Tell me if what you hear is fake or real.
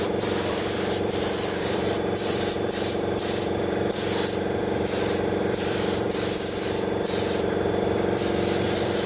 fake